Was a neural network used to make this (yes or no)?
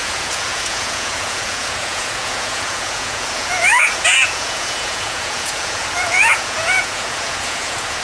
yes